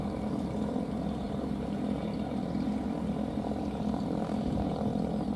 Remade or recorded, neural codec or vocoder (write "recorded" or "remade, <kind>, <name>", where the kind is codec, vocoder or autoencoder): remade, vocoder, BigVGAN v2